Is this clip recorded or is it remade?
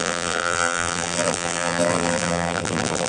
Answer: remade